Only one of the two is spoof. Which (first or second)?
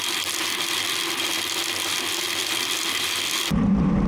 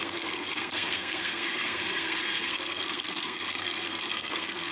second